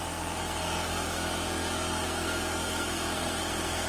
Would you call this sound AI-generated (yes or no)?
yes